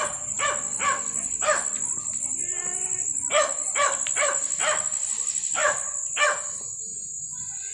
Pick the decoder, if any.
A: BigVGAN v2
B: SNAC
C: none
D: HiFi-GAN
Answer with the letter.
C